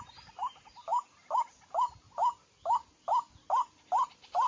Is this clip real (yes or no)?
yes